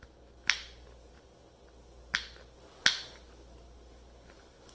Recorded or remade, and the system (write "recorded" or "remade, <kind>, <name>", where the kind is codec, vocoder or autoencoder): recorded